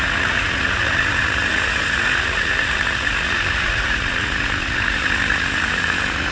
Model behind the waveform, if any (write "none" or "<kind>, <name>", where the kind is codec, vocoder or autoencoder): vocoder, Vocos